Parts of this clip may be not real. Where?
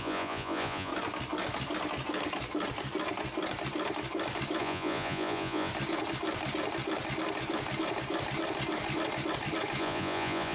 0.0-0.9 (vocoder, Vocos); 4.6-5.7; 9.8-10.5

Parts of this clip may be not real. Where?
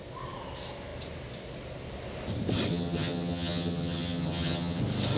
2.7-4.8 (vocoder, HiFi-GAN)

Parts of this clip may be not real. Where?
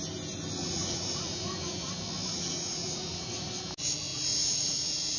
0.6-1.9 (vocoder, Vocos); 2.3-3.5; 4.1-5.2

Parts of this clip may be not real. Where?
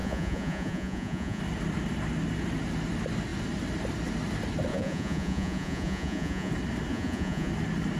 0.0-1.4 (vocoder, Vocos); 4.7-6.5; 6.9-7.5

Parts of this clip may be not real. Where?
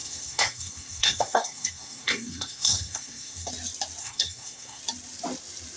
0.0-3.5 (codec, SNAC); 4.0-4.8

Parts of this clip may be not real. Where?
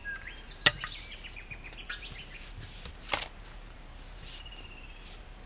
none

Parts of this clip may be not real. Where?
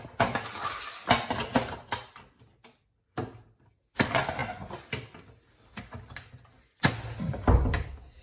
none